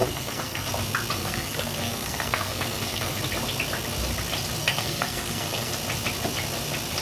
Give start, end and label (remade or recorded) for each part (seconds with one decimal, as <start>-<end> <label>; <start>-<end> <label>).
0.0-0.7 remade; 0.7-1.2 recorded; 1.2-3.2 remade; 3.2-4.6 recorded; 4.6-5.7 remade; 5.7-7.0 recorded